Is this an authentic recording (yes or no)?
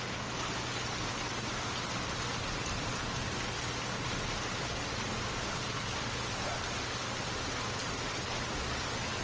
yes